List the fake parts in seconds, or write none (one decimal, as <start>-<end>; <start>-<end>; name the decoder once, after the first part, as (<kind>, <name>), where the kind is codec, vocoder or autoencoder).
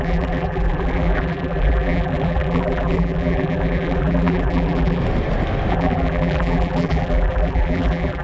0.0-5.0 (vocoder, BigVGAN v2); 5.7-8.2